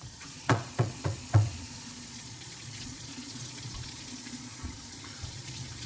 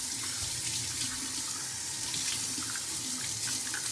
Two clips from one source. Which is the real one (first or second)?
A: second